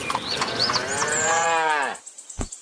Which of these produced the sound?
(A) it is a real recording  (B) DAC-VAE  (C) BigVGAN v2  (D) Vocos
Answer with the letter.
D